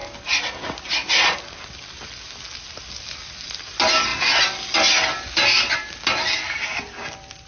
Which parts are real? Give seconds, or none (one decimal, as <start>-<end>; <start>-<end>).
0.0-7.5